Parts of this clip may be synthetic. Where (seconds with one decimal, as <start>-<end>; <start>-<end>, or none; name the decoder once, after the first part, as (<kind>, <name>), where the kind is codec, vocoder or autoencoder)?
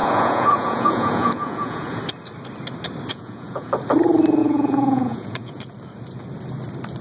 0.0-2.0 (vocoder, Vocos); 3.1-3.7; 4.4-5.6